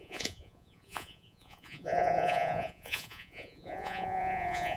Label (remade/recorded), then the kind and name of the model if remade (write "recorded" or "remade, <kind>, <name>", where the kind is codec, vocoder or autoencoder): remade, vocoder, Vocos